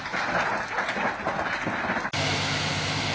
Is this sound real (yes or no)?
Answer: yes